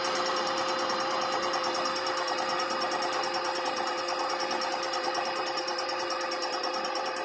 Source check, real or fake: fake